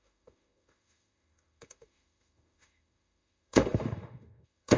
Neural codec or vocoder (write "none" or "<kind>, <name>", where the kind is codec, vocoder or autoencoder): autoencoder, DAC-VAE